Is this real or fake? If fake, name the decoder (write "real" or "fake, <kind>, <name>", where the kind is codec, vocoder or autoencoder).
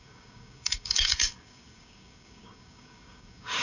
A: fake, codec, DAC